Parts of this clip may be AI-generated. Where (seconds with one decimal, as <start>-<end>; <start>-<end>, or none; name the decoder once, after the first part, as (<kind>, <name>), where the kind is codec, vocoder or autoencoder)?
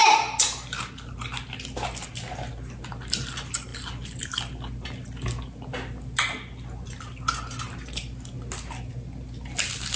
none